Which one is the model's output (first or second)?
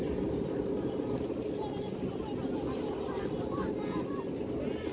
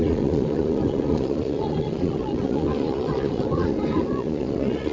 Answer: second